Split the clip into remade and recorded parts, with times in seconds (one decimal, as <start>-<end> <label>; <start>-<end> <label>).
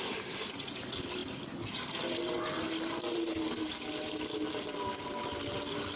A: 0.0-6.0 recorded